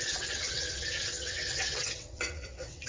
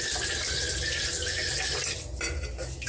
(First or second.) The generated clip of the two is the first